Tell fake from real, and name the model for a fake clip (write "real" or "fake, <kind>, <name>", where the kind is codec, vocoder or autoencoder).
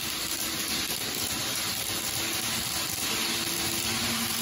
real